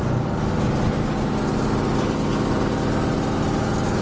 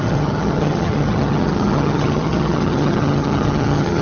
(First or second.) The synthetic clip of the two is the second